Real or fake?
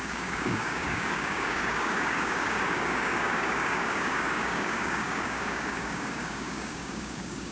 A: fake